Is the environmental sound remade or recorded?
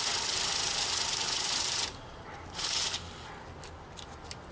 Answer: recorded